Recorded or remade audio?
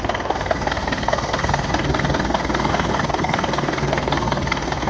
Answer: remade